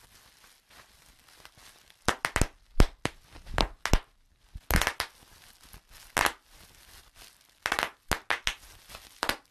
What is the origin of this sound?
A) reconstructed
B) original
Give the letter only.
B